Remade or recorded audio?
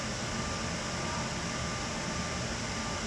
recorded